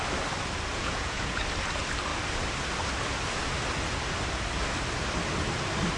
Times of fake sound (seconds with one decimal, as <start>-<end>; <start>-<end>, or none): 0.7-1.4